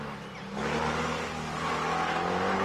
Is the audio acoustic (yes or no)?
yes